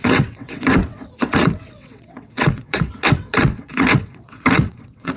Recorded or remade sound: remade